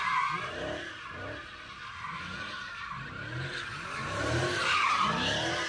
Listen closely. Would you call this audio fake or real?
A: real